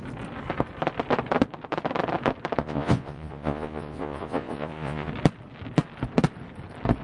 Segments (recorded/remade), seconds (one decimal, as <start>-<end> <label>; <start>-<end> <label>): 0.0-2.6 recorded; 2.6-5.1 remade; 5.1-7.0 recorded